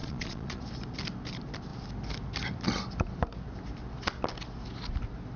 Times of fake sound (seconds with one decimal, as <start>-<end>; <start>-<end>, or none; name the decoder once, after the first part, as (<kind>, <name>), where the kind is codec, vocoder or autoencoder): 0.0-0.6 (vocoder, Vocos)